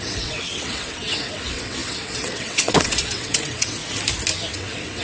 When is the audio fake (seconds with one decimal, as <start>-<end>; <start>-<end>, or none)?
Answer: 0.0-3.8; 4.5-5.0